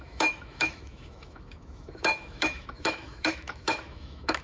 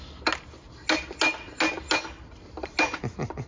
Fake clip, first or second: first